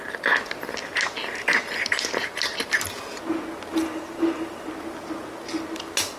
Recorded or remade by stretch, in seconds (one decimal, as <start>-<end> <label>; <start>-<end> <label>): 0.0-1.2 recorded; 1.2-1.8 remade; 1.8-3.8 recorded; 3.8-4.7 remade; 4.7-6.2 recorded